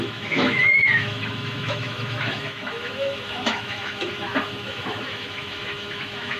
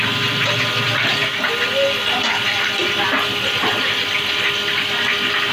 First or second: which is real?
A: second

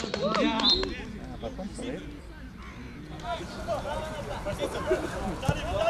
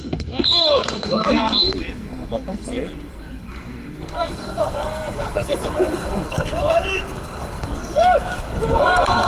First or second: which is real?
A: first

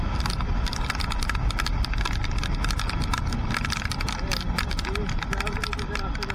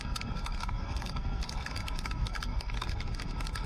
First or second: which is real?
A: first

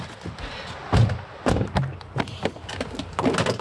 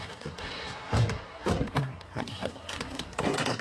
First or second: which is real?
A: first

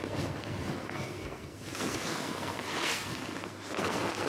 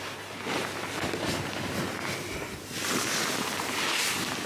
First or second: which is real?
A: second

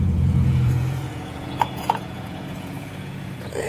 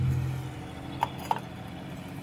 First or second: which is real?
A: second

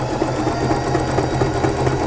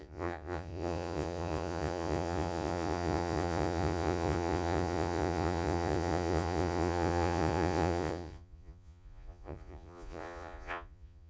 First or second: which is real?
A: first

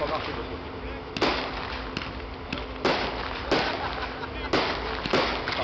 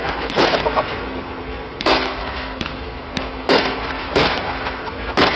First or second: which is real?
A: first